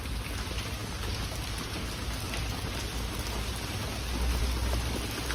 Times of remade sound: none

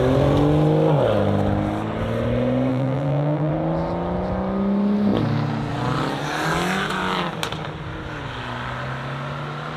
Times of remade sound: 2.7-3.5 (vocoder, BigVGAN v2)